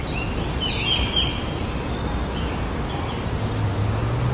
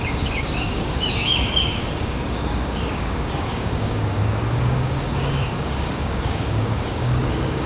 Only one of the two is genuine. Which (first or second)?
first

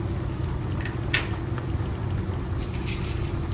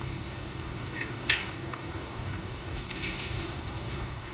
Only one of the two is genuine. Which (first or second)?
first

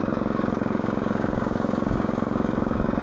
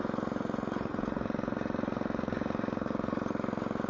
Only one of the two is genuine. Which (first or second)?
second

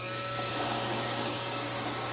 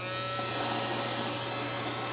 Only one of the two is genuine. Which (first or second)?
second